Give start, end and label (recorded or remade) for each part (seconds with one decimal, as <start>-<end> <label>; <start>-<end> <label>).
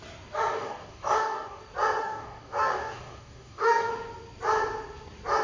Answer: 0.0-0.5 recorded; 0.5-1.6 remade; 1.6-2.0 recorded; 2.0-3.9 remade; 3.9-5.4 recorded